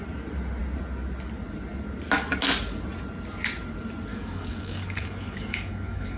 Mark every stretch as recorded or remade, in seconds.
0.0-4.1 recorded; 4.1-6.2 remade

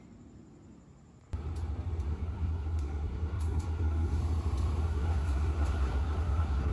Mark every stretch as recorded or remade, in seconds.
0.0-2.1 recorded; 2.1-4.2 remade; 4.2-4.8 recorded; 4.8-6.7 remade

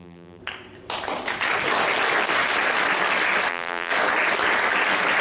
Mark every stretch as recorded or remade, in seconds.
0.0-0.4 remade; 0.4-3.5 recorded; 3.5-3.9 remade; 3.9-5.2 recorded

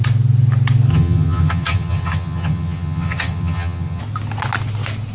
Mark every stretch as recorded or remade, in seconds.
0.0-0.9 recorded; 0.9-4.0 remade; 4.0-5.1 recorded